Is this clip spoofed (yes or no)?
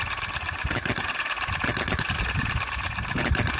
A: no